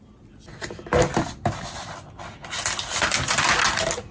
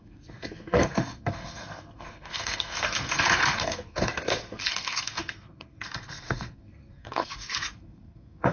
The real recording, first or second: first